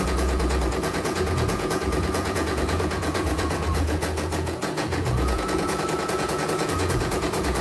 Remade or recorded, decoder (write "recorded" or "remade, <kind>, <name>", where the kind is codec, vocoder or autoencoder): remade, vocoder, Vocos